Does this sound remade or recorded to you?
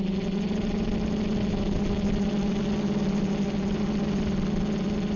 recorded